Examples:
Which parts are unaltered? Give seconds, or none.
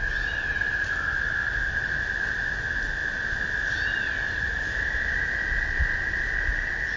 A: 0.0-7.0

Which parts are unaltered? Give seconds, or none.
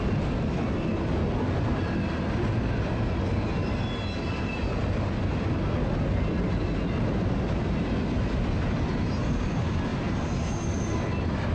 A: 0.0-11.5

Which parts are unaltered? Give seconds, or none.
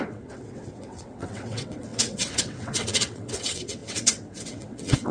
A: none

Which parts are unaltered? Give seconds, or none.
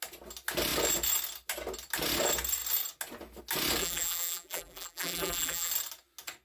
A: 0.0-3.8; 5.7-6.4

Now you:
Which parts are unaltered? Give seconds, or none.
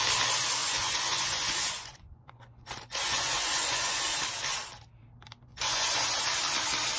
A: 0.0-0.6; 4.0-5.5; 6.2-7.0